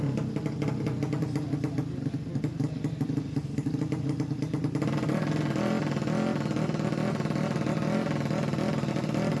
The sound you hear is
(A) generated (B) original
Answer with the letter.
B